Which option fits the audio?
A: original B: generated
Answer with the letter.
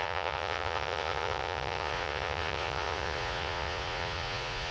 B